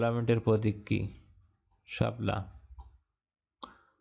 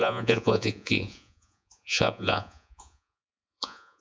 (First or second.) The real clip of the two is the first